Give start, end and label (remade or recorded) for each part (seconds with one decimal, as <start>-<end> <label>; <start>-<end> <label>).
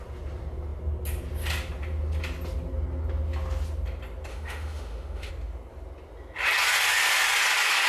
0.0-4.3 recorded; 4.3-5.3 remade; 5.3-7.9 recorded